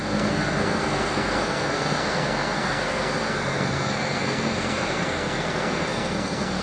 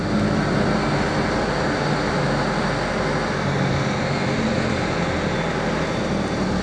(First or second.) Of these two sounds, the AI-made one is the first